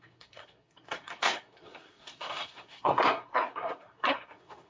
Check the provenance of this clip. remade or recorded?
remade